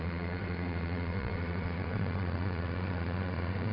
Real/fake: fake